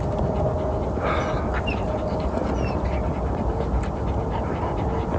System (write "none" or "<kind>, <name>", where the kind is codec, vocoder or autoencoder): none